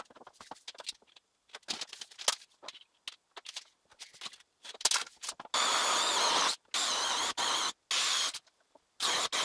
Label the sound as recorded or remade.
recorded